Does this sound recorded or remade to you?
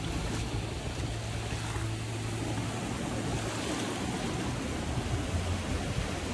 recorded